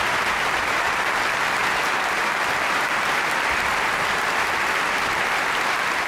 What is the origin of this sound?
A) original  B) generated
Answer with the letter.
A